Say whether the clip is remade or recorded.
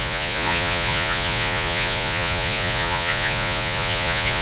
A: remade